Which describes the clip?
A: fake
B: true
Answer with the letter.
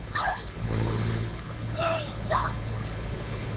A